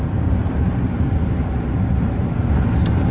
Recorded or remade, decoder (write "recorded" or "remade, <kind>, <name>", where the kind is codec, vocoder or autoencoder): remade, vocoder, BigVGAN v2